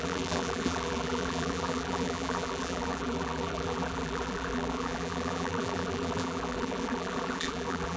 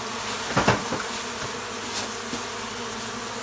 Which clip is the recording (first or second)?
second